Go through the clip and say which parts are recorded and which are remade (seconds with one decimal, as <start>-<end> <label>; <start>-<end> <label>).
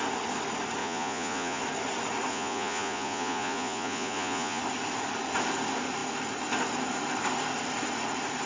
0.0-0.8 recorded; 0.8-1.6 remade; 1.6-2.3 recorded; 2.3-4.6 remade; 4.6-8.5 recorded